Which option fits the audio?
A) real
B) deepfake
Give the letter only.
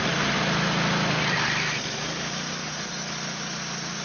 A